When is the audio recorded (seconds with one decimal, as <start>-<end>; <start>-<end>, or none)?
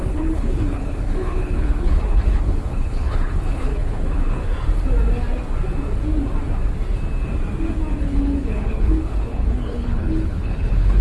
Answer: 4.4-8.0